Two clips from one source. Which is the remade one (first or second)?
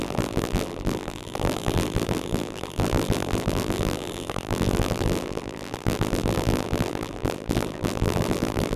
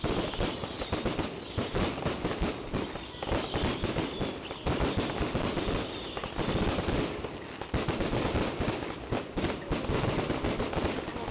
first